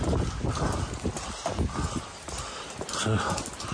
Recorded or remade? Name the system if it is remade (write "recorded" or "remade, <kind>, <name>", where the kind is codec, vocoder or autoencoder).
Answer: recorded